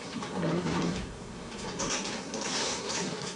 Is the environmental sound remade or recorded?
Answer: remade